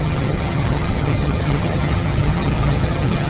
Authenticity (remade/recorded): remade